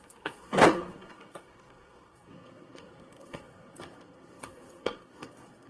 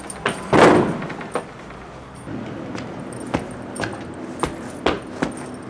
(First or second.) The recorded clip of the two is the second